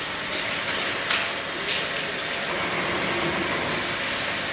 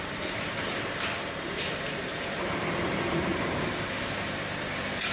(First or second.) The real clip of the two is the first